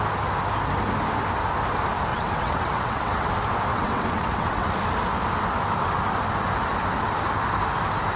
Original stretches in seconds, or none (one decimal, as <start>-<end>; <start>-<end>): 0.0-2.1; 3.3-3.7; 4.7-8.2